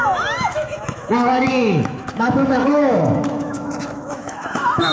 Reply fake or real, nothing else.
fake